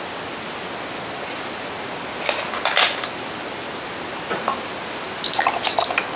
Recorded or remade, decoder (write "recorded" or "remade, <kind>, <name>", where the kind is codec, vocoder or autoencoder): recorded